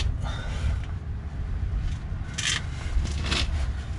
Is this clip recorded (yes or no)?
yes